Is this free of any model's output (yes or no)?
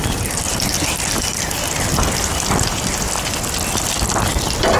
yes